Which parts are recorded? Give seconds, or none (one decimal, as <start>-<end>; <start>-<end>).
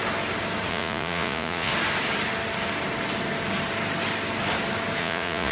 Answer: 0.0-0.7; 1.7-5.0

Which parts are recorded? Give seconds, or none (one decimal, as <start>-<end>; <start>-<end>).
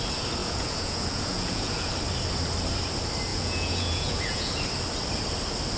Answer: 0.0-0.4; 1.9-3.3; 4.5-5.8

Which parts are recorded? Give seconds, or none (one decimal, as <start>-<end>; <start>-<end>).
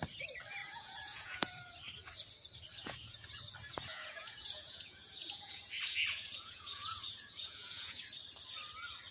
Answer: 0.0-0.6; 1.7-2.8; 3.4-3.9; 5.6-6.1; 8.0-9.1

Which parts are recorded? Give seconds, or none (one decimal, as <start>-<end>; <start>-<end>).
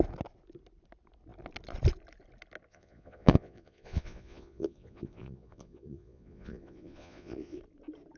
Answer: 0.0-2.7; 7.6-8.2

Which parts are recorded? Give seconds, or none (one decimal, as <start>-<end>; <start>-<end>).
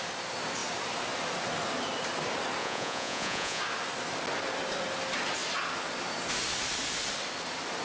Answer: 0.0-2.6; 3.6-7.8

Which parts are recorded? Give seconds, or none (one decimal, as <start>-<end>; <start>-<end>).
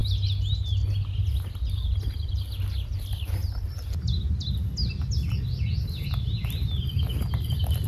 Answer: 0.0-7.9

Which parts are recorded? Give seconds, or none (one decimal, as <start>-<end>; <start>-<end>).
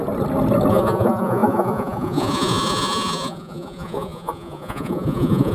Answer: 0.0-0.7